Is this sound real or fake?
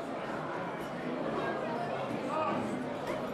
real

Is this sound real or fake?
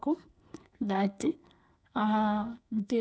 fake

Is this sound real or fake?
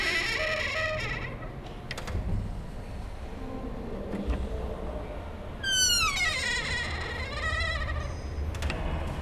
real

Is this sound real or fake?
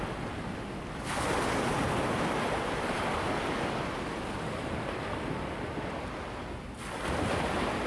real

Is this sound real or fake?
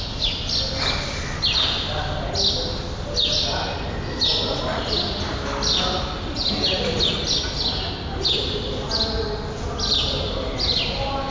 real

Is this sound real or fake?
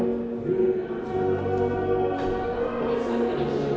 real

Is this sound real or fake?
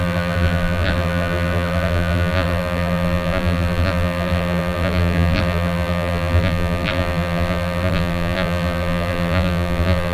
fake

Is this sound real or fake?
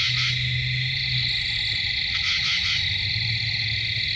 real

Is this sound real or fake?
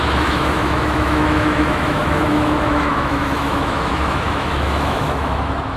fake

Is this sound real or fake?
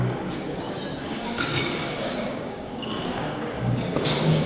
fake